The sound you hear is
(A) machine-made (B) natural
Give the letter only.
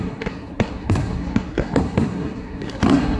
A